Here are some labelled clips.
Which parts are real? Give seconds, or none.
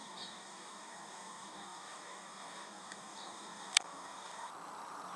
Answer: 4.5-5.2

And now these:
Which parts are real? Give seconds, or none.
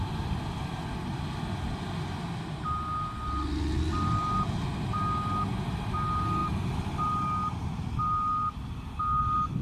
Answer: 0.0-9.6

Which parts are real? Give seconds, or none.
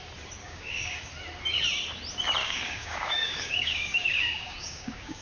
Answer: 0.0-0.4; 1.1-2.4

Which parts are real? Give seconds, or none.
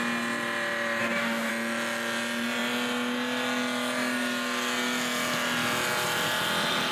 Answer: 0.0-1.0; 1.5-6.9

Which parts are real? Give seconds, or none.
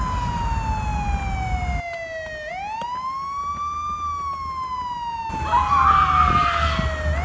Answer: 0.0-7.2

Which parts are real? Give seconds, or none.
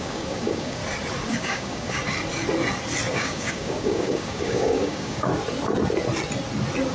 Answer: 0.8-1.3; 2.0-3.1; 5.3-6.9